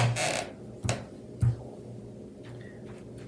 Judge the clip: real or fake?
real